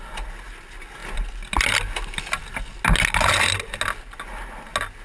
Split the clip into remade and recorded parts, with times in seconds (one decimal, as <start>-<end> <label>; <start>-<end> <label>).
0.0-5.0 recorded